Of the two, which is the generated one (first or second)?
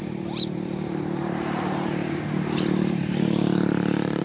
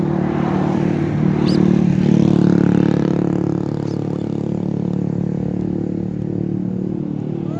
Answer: first